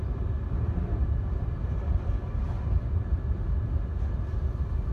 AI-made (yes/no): no